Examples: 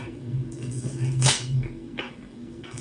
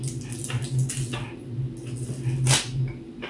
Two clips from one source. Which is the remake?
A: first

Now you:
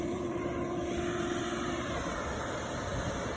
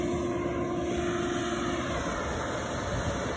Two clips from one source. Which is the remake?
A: first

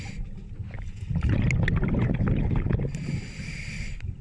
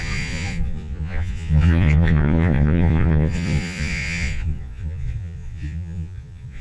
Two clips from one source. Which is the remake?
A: second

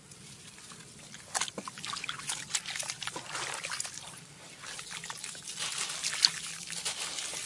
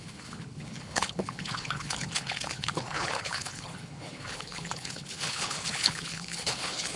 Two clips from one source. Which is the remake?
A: second